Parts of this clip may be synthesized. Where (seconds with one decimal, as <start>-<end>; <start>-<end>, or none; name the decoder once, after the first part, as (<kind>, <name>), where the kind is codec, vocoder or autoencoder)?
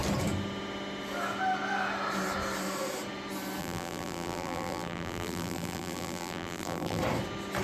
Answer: 3.6-7.0 (vocoder, BigVGAN v2)